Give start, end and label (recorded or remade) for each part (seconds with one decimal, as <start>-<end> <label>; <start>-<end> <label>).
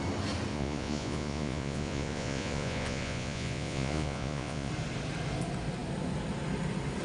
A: 0.0-0.5 recorded; 0.5-4.7 remade; 4.7-7.0 recorded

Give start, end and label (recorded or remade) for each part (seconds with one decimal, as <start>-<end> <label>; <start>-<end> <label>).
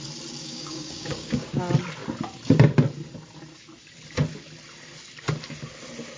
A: 0.0-0.4 recorded; 0.4-1.6 remade; 1.6-6.2 recorded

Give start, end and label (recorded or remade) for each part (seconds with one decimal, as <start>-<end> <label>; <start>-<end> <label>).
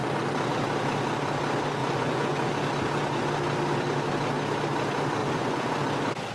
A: 0.0-1.8 recorded; 1.8-2.5 remade; 2.5-5.2 recorded; 5.2-5.8 remade; 5.8-6.3 recorded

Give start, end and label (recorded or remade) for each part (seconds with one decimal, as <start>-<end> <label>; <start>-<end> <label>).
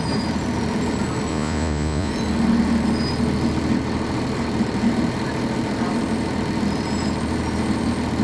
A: 0.0-1.3 recorded; 1.3-2.1 remade; 2.1-8.2 recorded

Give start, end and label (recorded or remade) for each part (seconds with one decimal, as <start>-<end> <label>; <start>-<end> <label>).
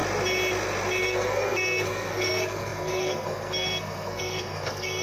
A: 0.0-1.0 recorded; 1.0-5.0 remade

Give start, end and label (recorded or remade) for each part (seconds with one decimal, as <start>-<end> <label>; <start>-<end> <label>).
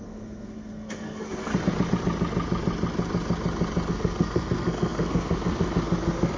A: 0.0-1.5 remade; 1.5-3.9 recorded; 3.9-6.4 remade